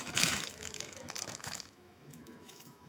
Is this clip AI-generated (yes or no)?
yes